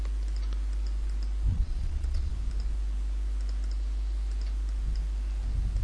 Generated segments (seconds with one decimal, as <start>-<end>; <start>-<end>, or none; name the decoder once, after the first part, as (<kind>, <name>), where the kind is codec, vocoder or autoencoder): 1.5-2.3 (vocoder, Vocos)